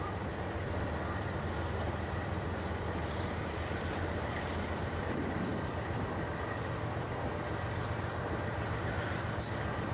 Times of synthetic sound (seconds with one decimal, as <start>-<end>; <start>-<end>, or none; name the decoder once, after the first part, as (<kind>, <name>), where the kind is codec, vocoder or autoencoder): 3.0-5.0 (vocoder, BigVGAN v2)